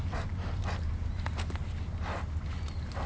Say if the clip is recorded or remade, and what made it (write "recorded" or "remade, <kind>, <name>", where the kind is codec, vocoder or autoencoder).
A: recorded